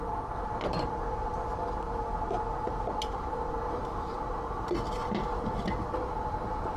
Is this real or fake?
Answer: real